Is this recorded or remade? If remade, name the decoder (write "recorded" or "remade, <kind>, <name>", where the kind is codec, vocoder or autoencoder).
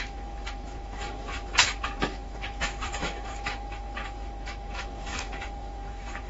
remade, autoencoder, DAC-VAE